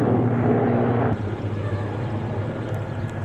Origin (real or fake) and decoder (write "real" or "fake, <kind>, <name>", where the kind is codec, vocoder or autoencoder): real